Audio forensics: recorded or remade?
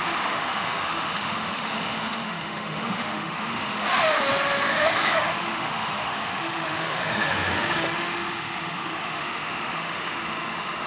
remade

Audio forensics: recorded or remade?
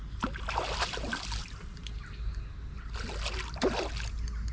recorded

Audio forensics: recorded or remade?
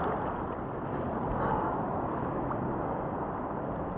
recorded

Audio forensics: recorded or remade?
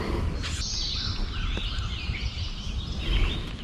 recorded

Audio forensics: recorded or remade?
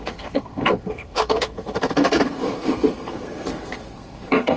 remade